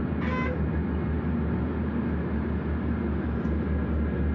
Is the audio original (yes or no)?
yes